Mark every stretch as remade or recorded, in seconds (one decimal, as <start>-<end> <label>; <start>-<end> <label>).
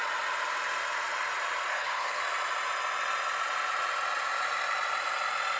0.0-1.7 recorded; 1.7-2.2 remade; 2.2-5.6 recorded